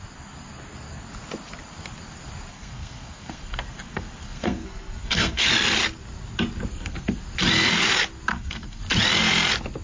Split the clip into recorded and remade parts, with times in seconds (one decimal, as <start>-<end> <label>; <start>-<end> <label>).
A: 0.0-2.5 recorded; 2.5-5.5 remade; 5.5-6.7 recorded; 6.7-7.2 remade; 7.2-8.3 recorded; 8.3-8.8 remade; 8.8-9.8 recorded